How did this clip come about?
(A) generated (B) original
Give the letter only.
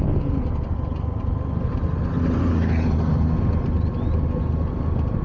B